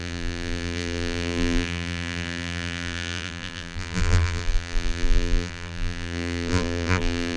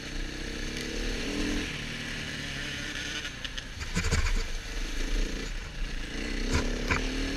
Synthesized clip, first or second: first